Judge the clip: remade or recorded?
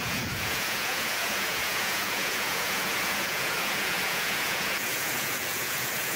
remade